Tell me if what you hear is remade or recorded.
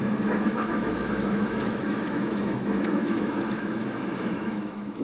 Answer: remade